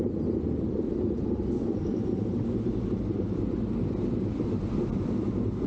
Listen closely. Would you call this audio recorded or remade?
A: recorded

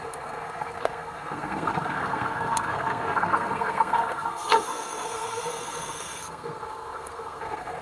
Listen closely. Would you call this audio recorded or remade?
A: remade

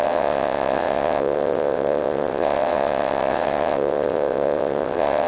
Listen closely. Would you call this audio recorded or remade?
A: remade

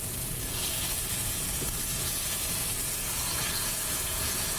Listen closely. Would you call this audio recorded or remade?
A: remade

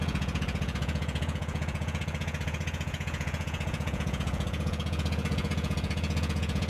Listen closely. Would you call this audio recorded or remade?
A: remade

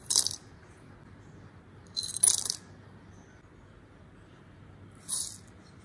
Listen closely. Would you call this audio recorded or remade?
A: recorded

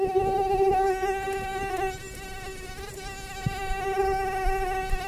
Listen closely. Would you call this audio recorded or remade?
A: recorded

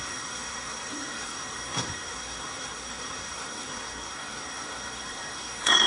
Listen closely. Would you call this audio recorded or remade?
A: remade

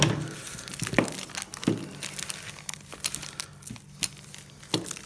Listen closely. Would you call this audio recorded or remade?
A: recorded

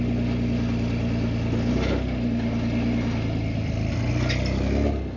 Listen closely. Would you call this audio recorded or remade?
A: recorded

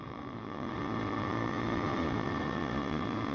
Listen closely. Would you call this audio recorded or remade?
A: remade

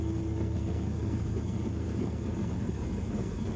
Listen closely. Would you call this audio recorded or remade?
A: remade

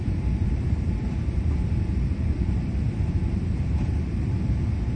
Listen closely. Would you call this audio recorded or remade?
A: remade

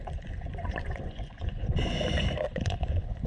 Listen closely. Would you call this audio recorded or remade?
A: remade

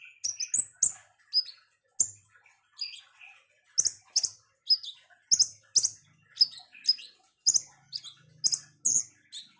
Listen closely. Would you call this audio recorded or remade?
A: recorded